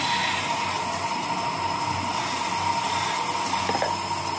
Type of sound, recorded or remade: recorded